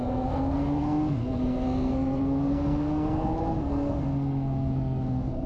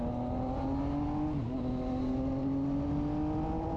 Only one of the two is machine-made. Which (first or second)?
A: first